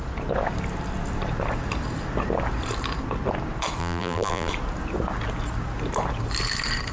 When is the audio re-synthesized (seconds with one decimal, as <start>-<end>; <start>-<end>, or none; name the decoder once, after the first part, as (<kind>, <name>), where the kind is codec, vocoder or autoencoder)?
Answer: 3.8-4.5 (vocoder, BigVGAN v2)